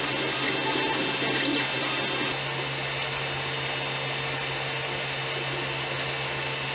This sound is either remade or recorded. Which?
recorded